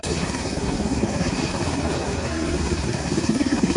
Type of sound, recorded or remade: remade